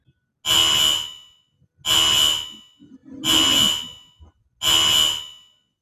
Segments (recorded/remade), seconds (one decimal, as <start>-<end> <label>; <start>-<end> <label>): 0.0-5.8 recorded